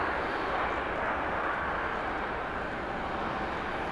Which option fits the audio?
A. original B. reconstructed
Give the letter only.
A